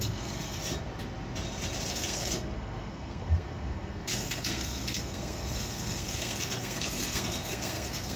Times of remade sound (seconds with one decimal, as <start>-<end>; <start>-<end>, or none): 0.0-0.6; 1.9-8.2